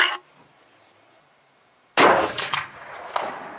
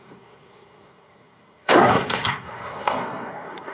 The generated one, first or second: second